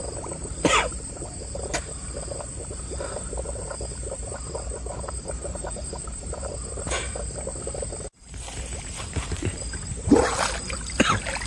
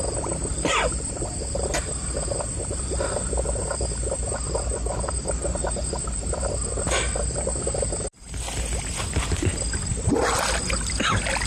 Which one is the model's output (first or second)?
first